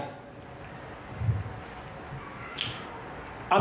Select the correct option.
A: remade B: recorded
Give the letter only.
B